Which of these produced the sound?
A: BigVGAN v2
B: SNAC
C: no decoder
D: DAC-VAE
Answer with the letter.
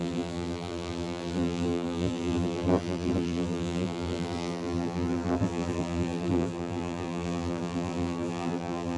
A